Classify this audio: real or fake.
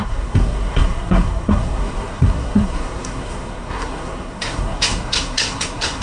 fake